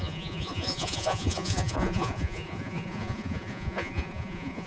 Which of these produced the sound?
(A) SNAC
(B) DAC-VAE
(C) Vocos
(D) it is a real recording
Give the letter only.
C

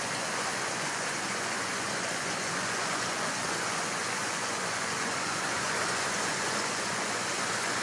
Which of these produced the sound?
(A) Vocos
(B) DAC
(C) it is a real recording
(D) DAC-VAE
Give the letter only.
A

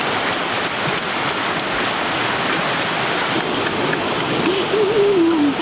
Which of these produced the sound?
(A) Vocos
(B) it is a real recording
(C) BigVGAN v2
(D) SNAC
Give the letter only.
B